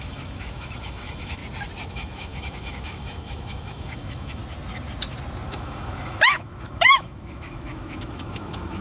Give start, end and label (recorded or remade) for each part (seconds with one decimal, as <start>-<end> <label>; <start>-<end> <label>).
0.0-1.4 remade; 1.4-1.9 recorded; 1.9-4.4 remade; 4.4-5.5 recorded; 5.5-8.8 remade